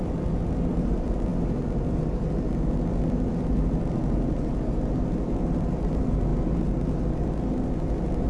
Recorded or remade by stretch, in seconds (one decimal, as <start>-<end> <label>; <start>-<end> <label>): 0.0-1.3 remade; 1.3-2.1 recorded; 2.1-6.3 remade; 6.3-8.3 recorded